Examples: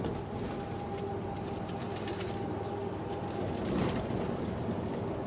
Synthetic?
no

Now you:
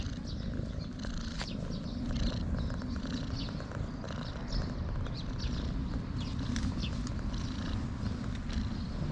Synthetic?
no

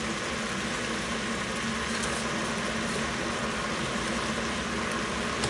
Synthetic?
no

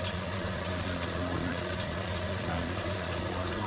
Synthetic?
yes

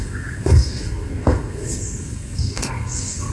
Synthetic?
yes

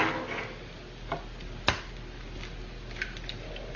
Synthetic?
no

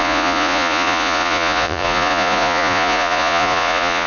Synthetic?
yes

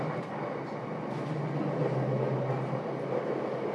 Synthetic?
no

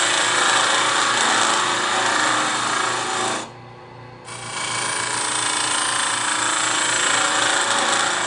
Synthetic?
no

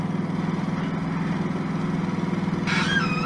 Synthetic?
no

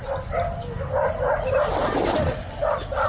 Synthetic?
no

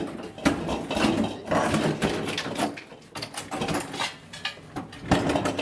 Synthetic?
no